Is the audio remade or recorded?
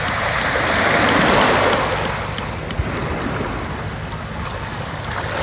recorded